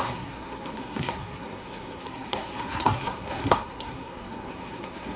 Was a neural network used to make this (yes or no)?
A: yes